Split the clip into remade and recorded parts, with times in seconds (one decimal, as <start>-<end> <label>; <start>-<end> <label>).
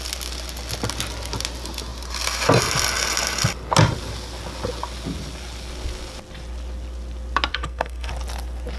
0.0-7.5 recorded; 7.5-8.1 remade; 8.1-8.8 recorded